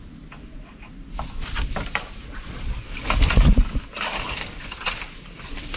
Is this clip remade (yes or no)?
yes